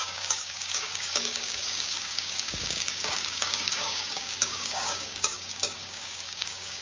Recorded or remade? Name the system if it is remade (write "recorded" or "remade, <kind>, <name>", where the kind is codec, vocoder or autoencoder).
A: remade, codec, DAC